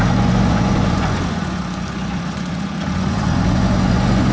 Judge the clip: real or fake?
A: fake